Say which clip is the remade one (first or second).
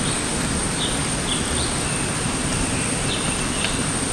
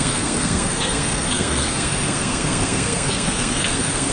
second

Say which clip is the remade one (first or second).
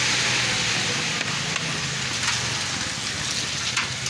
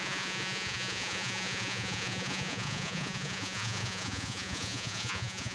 second